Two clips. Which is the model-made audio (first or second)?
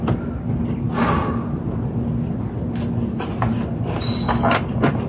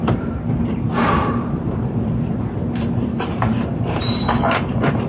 second